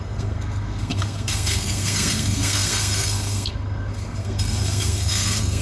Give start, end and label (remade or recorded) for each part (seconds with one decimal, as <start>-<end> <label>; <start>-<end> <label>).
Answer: 0.0-5.6 remade